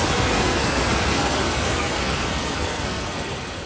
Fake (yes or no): yes